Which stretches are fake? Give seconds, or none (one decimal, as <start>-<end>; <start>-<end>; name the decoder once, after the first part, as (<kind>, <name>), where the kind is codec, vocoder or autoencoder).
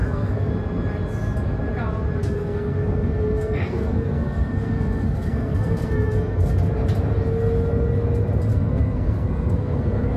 0.0-0.5 (codec, SNAC); 2.2-6.5; 8.5-10.2